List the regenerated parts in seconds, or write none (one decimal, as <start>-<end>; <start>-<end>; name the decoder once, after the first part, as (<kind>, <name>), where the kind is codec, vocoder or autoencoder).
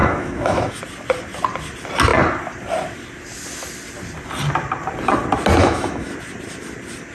0.0-0.8 (autoencoder, DAC-VAE); 5.6-6.1